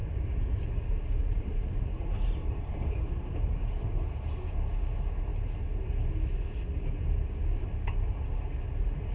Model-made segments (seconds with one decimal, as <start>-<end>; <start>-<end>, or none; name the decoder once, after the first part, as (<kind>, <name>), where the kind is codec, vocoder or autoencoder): 1.2-4.4 (vocoder, BigVGAN v2)